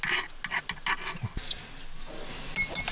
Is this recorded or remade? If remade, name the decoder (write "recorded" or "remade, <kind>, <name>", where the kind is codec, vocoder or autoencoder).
recorded